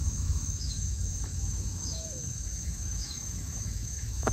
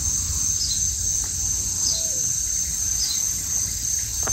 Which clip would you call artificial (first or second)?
first